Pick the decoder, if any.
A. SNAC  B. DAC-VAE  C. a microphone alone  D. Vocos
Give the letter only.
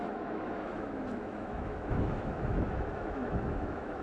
B